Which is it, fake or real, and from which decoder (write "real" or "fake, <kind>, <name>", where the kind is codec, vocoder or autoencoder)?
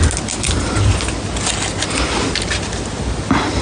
real